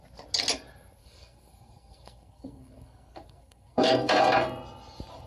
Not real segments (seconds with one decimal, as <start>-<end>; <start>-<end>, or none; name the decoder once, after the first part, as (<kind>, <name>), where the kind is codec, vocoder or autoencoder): 1.0-4.2 (codec, SNAC)